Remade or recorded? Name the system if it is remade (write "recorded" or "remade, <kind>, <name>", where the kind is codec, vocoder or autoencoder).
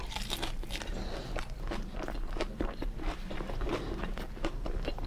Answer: remade, vocoder, BigVGAN v2